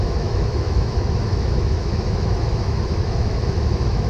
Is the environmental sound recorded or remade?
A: remade